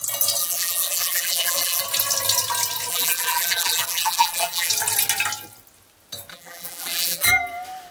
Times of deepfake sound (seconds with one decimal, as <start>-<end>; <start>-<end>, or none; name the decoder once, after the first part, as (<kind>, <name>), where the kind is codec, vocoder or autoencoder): 0.4-1.8 (vocoder, BigVGAN v2); 2.9-4.7; 6.3-7.3